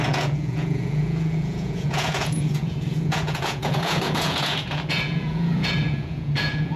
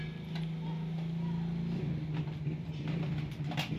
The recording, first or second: second